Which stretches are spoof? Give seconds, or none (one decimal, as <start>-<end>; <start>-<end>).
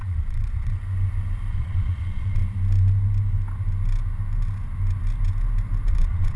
0.0-0.8; 1.5-2.4; 5.9-6.4